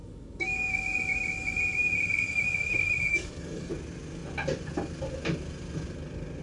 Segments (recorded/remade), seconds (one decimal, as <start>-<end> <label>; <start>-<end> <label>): 0.0-0.8 remade; 0.8-3.1 recorded; 3.1-3.7 remade; 3.7-6.4 recorded